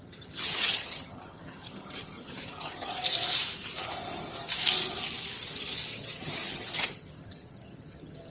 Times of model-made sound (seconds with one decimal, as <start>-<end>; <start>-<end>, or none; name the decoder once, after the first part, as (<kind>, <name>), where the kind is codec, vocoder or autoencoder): 0.0-2.9 (vocoder, HiFi-GAN); 5.4-8.3